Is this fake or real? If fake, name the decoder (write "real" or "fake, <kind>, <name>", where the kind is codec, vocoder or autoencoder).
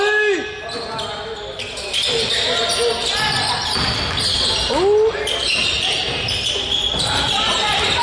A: real